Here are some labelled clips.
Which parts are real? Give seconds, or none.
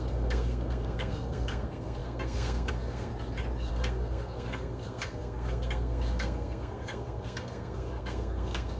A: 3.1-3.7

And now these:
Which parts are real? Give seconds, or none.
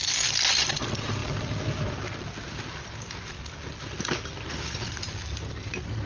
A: 0.0-6.1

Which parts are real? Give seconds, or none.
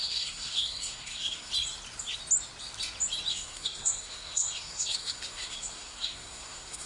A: 1.5-3.3